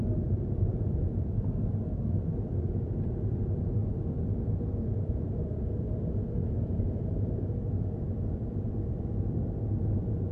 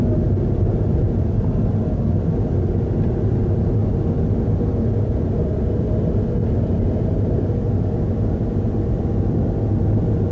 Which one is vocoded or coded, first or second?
first